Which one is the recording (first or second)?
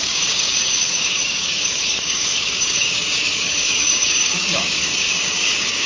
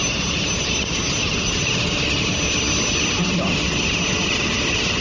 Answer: second